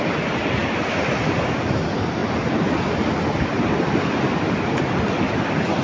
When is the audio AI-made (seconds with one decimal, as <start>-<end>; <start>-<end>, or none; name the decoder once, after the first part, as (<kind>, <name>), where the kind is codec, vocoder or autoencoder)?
none